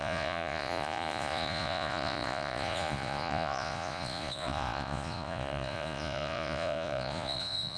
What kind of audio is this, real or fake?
fake